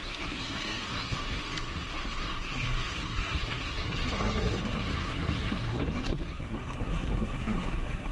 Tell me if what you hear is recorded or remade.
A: remade